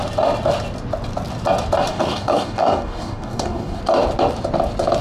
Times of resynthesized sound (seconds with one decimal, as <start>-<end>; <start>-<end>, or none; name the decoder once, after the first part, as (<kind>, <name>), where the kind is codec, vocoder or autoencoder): 1.9-3.8 (codec, DAC)